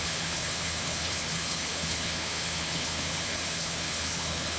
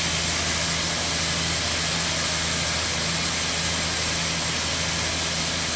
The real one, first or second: second